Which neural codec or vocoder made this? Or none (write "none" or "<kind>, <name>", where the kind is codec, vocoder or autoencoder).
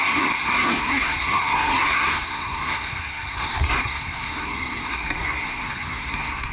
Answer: codec, SNAC